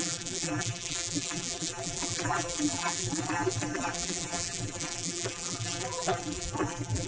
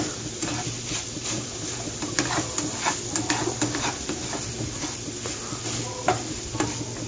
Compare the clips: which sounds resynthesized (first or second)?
first